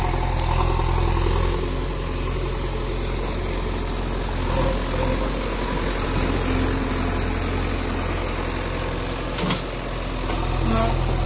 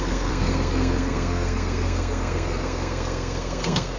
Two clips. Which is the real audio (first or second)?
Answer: first